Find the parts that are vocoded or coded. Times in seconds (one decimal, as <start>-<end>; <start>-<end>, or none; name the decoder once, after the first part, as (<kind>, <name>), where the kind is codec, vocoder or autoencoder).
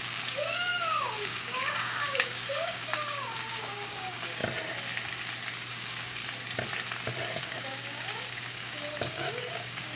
0.0-4.4 (codec, DAC); 5.7-6.2; 7.4-10.0